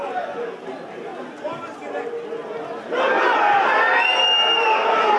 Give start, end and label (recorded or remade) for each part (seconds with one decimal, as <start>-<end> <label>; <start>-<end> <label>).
0.0-5.2 recorded